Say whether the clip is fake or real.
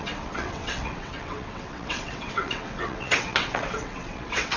fake